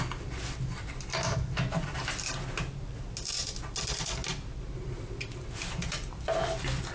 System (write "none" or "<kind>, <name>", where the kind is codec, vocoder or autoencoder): none